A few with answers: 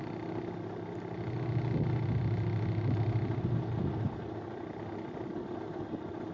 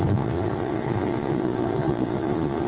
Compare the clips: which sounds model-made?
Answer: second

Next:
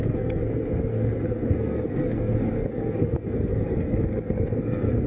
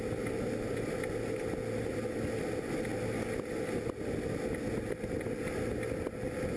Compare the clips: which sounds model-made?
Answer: first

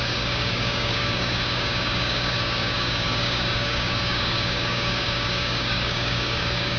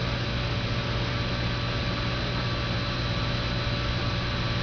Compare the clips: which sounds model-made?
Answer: first